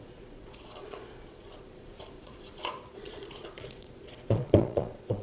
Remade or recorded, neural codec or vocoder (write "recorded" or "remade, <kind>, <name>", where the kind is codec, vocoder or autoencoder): remade, vocoder, Vocos